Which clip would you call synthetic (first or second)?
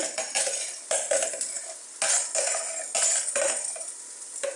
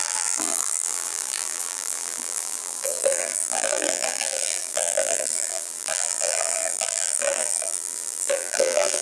second